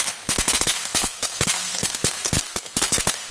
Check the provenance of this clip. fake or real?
fake